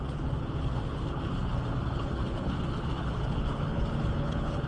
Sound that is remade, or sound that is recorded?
remade